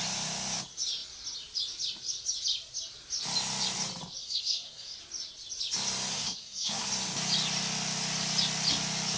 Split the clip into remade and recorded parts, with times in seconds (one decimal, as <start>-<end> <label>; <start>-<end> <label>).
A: 0.0-4.2 recorded; 4.2-5.0 remade; 5.0-6.1 recorded; 6.1-6.9 remade; 6.9-9.2 recorded